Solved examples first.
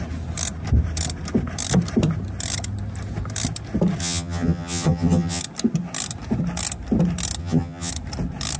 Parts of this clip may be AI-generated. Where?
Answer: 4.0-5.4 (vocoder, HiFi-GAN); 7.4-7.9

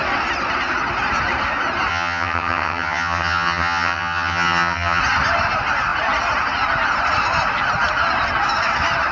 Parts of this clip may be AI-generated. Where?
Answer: 1.9-5.0 (vocoder, HiFi-GAN)

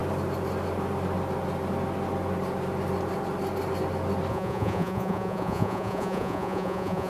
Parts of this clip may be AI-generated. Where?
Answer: 4.3-7.1 (vocoder, Vocos)

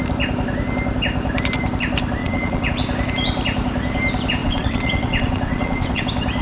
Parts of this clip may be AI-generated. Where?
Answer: 2.2-2.7 (vocoder, WaveNeXt); 4.4-6.0